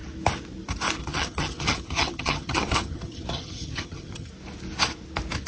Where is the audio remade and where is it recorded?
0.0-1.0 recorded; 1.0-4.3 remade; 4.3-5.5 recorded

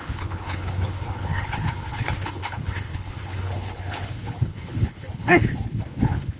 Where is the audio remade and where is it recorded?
0.0-6.4 remade

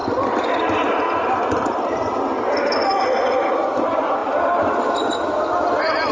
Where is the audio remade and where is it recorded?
0.0-6.1 recorded